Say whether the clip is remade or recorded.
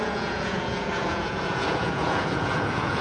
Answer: remade